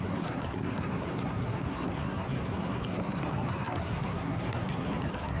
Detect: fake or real fake